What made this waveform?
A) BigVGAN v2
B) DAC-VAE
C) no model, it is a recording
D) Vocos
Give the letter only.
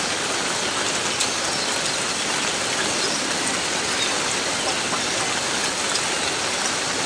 C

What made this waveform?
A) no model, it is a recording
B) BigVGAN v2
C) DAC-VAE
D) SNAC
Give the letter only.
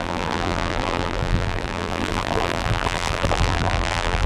B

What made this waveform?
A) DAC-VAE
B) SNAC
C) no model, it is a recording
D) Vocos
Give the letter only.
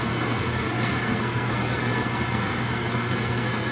B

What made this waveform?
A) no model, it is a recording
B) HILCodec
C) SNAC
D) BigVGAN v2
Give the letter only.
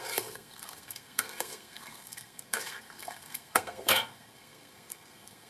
C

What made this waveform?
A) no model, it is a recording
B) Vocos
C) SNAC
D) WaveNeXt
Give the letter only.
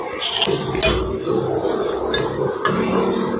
A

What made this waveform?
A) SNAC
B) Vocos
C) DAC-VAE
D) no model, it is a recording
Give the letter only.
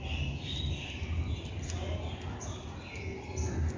D